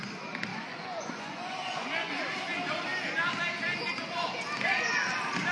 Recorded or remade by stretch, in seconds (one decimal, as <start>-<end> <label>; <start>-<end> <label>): 0.0-0.5 recorded; 0.5-2.1 remade; 2.1-5.5 recorded